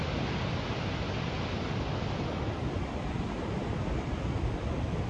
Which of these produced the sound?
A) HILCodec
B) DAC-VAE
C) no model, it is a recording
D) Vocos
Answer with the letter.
C